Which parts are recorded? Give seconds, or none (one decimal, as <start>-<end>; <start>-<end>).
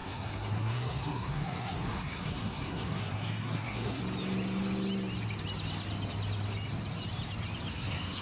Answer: 4.0-7.7